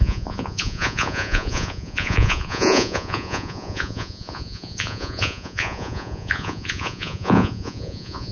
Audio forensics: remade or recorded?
remade